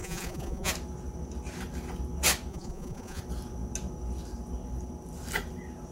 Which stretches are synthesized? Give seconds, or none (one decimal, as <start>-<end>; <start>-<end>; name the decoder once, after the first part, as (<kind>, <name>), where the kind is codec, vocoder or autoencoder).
0.0-0.7 (vocoder, Vocos); 2.5-3.2